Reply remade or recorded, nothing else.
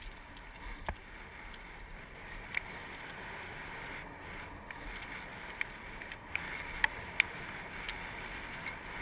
recorded